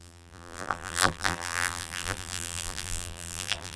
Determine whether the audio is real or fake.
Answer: fake